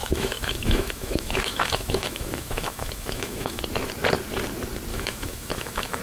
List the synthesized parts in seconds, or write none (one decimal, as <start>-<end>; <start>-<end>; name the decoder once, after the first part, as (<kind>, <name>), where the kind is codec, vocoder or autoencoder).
0.0-3.6 (autoencoder, DAC-VAE); 4.9-6.0